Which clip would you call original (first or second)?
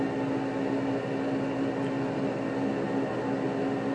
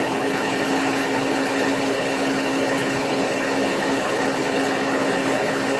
first